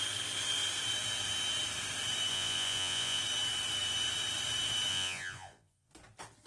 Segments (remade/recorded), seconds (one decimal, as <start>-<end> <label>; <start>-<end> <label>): 0.0-2.3 recorded; 2.3-3.2 remade; 3.2-4.9 recorded; 4.9-5.9 remade; 5.9-6.5 recorded